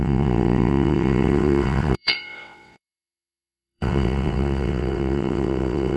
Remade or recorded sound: remade